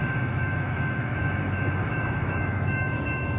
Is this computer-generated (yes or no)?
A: yes